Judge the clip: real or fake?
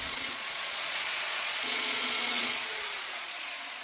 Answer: fake